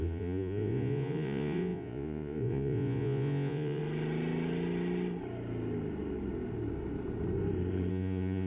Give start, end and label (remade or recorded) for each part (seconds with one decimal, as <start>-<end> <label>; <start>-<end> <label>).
0.0-3.8 remade; 3.8-7.9 recorded; 7.9-8.5 remade